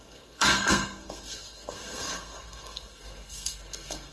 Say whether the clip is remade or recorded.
remade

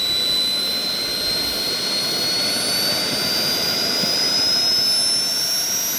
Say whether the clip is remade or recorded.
recorded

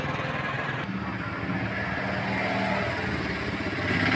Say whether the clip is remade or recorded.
recorded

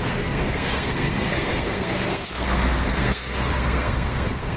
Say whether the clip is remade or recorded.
remade